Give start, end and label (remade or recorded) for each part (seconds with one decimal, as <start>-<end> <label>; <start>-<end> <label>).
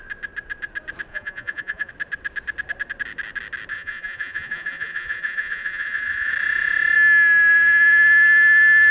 0.0-1.1 recorded; 1.1-1.9 remade; 1.9-3.7 recorded; 3.7-6.3 remade; 6.3-8.9 recorded